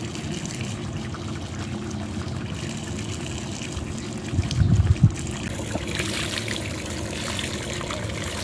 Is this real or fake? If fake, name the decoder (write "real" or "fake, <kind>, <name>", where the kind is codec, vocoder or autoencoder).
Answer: real